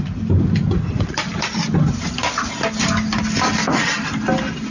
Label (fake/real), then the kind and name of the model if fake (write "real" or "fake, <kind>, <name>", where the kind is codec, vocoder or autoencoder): real